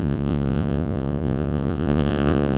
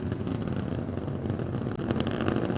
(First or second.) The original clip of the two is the second